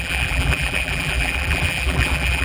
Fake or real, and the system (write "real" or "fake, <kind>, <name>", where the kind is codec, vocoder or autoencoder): fake, vocoder, BigVGAN v2